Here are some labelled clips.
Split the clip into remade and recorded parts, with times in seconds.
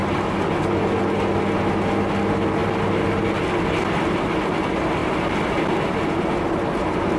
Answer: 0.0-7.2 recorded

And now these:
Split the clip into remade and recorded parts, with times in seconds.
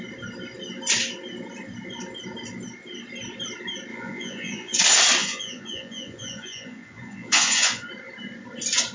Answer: 0.0-3.9 recorded; 3.9-4.8 remade; 4.8-5.2 recorded; 5.2-7.9 remade; 7.9-8.9 recorded